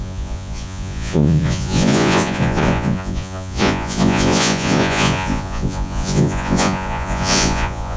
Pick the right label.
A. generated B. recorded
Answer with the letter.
A